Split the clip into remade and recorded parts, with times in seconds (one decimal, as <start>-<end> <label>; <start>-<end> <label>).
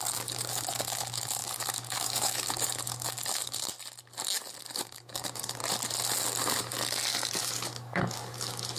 0.0-3.7 remade; 3.7-4.7 recorded; 4.7-5.6 remade; 5.6-7.4 recorded; 7.4-8.8 remade